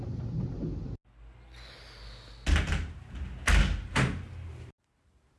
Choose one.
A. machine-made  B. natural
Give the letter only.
B